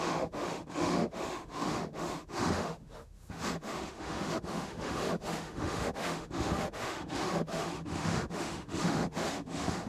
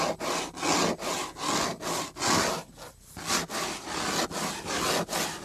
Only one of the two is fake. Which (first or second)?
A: first